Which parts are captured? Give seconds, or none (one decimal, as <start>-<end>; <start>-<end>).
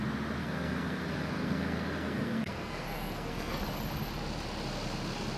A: 0.0-0.4; 3.6-5.4